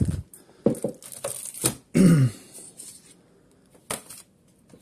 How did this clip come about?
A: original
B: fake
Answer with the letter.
A